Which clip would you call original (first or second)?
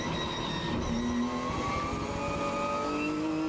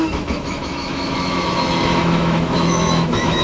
first